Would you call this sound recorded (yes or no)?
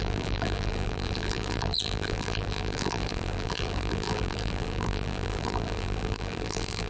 no